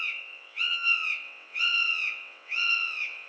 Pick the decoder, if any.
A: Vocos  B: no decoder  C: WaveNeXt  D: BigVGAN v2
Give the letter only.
C